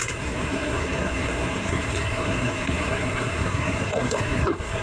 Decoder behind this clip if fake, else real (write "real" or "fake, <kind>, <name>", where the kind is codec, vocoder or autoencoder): fake, codec, SNAC